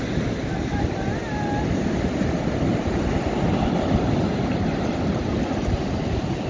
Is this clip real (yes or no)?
yes